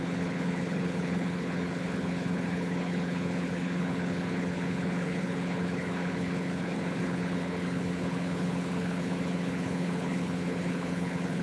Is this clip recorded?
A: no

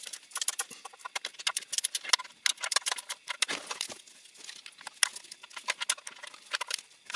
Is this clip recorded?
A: yes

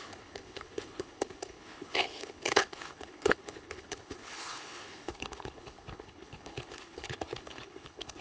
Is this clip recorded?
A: no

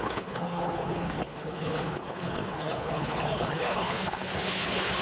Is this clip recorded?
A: no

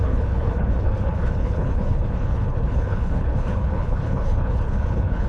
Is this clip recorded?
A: no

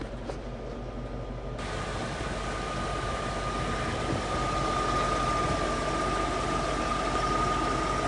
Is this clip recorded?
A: yes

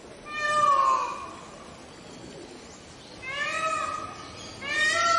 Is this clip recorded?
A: yes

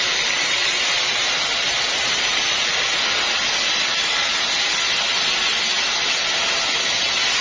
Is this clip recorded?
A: yes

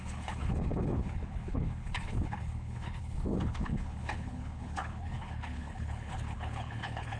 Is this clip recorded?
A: no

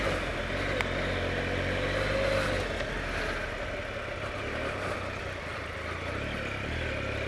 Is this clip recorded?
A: yes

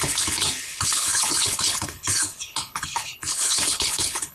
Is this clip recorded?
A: no